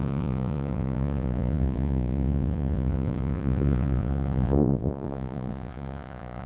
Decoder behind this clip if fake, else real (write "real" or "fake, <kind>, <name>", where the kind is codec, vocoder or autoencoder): fake, vocoder, Vocos